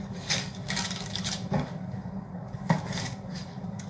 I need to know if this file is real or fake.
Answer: fake